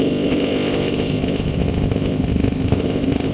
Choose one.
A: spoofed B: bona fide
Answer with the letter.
A